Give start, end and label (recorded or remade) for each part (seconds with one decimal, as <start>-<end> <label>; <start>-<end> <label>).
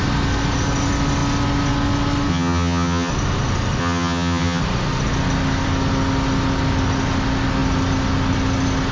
0.0-2.3 recorded; 2.3-3.1 remade; 3.1-3.8 recorded; 3.8-4.6 remade; 4.6-8.9 recorded